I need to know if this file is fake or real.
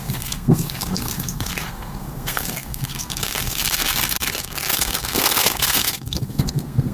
fake